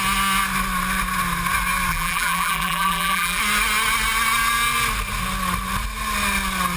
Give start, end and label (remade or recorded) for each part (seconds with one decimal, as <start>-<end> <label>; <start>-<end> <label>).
0.0-1.9 recorded; 1.9-3.4 remade; 3.4-6.8 recorded

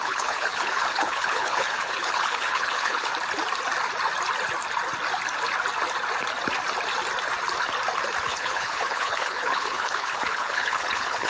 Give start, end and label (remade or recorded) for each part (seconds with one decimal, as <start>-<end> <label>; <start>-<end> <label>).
0.0-3.1 remade; 3.1-8.2 recorded; 8.2-11.3 remade

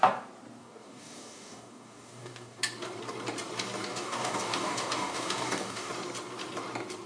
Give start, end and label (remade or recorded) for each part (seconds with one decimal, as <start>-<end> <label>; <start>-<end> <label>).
0.0-0.6 recorded; 0.6-2.6 remade; 2.6-3.9 recorded; 3.9-5.9 remade; 5.9-7.1 recorded

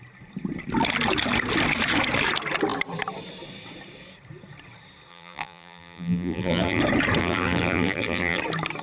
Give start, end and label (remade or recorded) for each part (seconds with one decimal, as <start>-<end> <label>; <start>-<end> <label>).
0.0-5.1 recorded; 5.1-6.8 remade; 6.8-7.2 recorded; 7.2-8.4 remade; 8.4-8.8 recorded

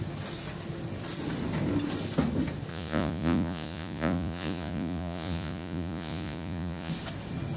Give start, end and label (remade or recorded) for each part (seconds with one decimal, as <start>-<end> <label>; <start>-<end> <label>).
0.0-2.7 recorded; 2.7-6.9 remade; 6.9-7.6 recorded

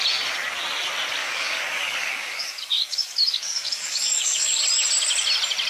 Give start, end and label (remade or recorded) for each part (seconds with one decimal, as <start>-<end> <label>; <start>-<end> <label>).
0.0-1.2 recorded; 1.2-4.6 remade; 4.6-5.7 recorded

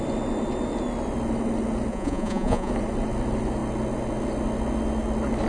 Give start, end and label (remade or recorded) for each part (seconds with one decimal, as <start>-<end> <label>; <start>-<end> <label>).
0.0-1.9 recorded; 1.9-2.7 remade; 2.7-5.5 recorded

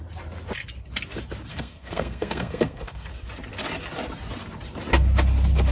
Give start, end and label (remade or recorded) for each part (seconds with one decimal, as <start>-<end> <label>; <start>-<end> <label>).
0.0-1.5 recorded; 1.5-3.1 remade; 3.1-5.7 recorded